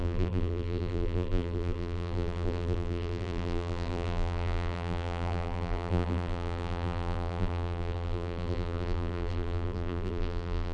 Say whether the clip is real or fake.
fake